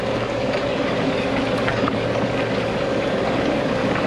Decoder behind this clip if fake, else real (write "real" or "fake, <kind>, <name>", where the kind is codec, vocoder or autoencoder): fake, codec, DAC